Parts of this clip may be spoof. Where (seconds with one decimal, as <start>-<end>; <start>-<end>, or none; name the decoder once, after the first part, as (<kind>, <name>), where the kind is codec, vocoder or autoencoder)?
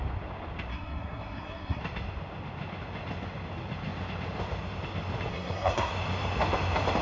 0.7-1.8 (codec, SNAC); 5.3-5.9